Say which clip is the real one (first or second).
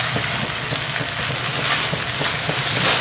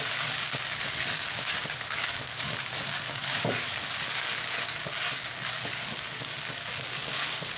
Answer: first